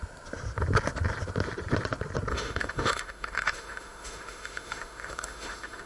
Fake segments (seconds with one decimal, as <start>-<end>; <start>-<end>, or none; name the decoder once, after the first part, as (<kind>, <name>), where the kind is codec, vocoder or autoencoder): 2.3-5.9 (autoencoder, DAC-VAE)